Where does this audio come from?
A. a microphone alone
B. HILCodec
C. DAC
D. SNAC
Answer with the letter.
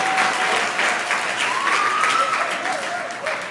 A